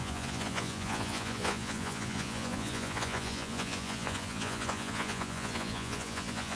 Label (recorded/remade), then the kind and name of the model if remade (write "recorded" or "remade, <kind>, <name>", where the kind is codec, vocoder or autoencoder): remade, vocoder, Vocos